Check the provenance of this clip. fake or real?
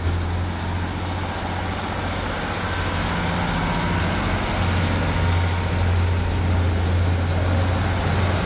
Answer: real